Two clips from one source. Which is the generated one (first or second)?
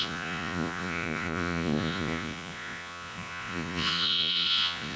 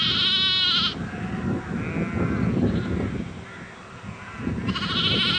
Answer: first